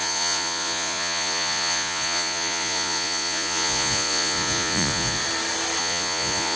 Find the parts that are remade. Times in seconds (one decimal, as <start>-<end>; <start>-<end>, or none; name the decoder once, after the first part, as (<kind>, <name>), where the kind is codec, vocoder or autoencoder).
0.0-5.2 (vocoder, Vocos); 5.8-6.6